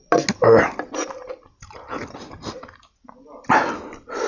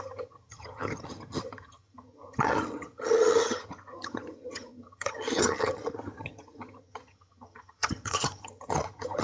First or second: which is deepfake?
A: second